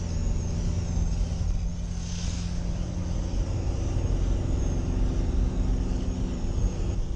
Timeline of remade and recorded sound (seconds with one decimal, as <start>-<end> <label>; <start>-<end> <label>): 0.0-7.2 recorded